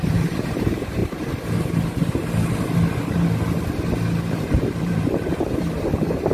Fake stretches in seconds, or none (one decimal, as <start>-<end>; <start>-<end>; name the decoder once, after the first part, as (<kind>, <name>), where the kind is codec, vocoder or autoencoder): 0.0-1.0 (vocoder, BigVGAN v2); 4.3-6.3